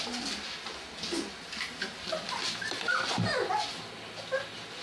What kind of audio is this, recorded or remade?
recorded